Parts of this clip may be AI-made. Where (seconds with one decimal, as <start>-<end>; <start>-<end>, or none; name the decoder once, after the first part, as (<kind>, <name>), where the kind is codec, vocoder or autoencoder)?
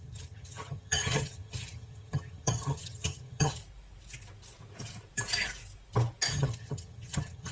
0.0-3.6 (vocoder, HiFi-GAN); 6.3-7.5